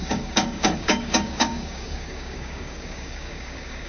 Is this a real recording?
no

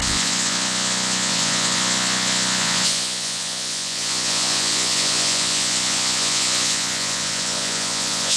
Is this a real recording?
no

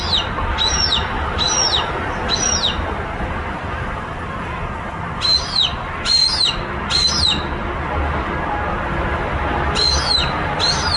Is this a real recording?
yes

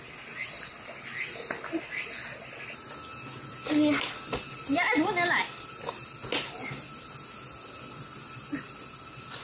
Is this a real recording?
yes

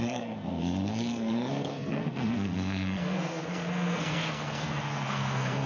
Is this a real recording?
no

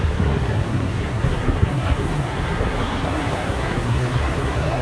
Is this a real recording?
no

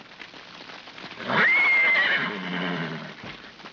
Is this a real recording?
yes